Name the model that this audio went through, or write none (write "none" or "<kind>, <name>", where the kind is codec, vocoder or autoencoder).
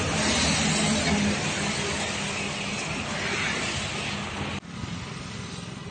none